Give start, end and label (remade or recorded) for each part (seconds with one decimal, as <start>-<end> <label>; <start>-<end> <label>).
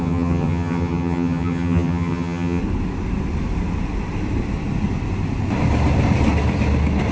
0.0-2.6 remade; 2.6-7.1 recorded